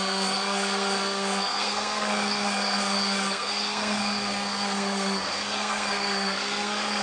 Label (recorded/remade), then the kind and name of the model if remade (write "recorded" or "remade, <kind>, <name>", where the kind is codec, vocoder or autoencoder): remade, codec, SNAC